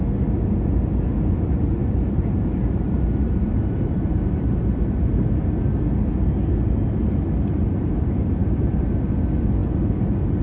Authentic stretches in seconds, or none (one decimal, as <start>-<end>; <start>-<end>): 0.0-1.8; 5.8-8.4; 8.9-10.4